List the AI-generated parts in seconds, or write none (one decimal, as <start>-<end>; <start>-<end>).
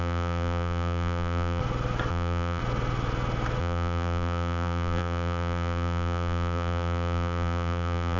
0.0-1.6; 2.1-2.6; 3.6-8.2